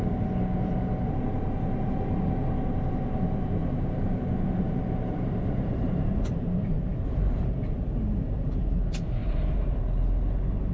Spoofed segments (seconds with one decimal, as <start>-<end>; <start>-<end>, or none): 3.6-6.0; 6.9-8.6; 9.2-9.8